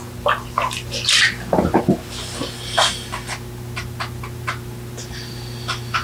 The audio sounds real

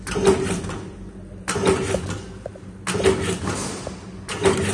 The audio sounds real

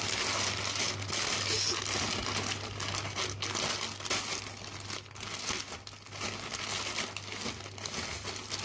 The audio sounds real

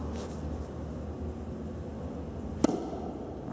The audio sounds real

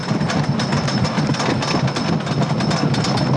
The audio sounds real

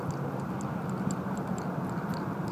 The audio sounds real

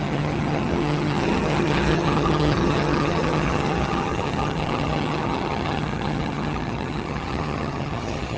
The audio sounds fake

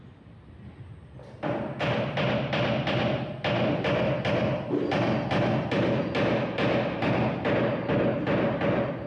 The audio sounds real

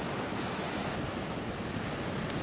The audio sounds real